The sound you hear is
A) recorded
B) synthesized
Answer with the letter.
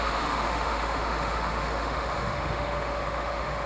B